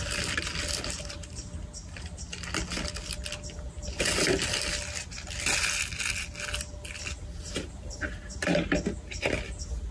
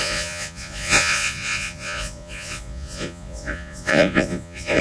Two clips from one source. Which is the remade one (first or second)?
second